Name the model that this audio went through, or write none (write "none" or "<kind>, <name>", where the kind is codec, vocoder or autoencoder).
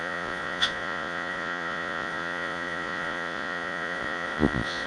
vocoder, Vocos